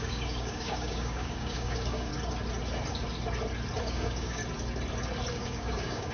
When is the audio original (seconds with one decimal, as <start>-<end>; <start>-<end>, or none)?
2.1-3.8; 4.4-5.3